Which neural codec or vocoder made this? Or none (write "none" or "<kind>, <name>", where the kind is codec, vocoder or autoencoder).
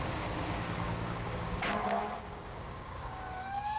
codec, DAC